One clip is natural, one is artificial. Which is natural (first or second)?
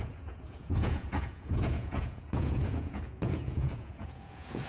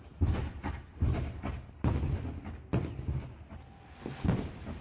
second